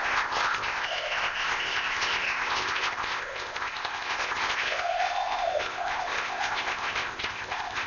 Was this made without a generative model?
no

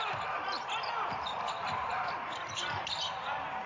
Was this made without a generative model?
yes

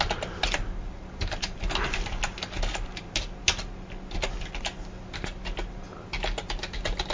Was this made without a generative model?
yes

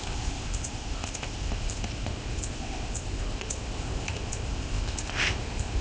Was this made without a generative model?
no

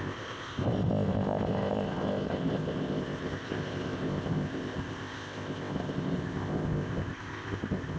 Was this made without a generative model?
no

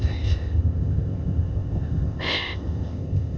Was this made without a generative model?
no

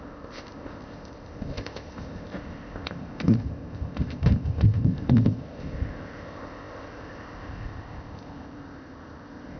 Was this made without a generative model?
no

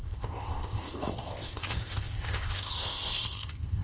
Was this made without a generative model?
no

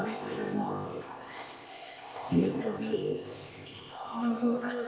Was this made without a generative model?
no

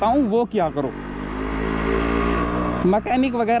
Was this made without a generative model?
yes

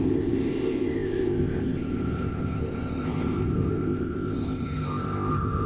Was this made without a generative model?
no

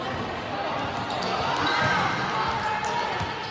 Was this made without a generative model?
yes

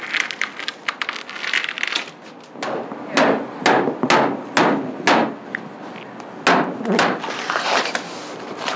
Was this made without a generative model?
yes